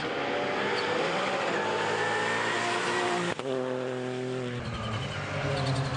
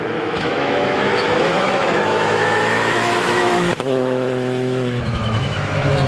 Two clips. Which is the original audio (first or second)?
first